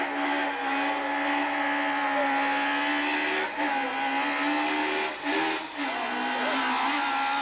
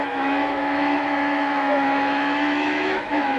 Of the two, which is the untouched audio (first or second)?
first